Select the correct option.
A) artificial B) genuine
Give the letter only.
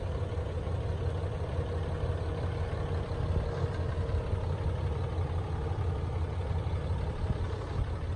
B